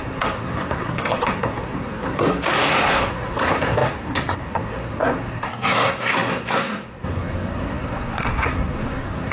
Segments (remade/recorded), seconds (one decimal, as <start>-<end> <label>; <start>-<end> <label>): 0.0-9.3 remade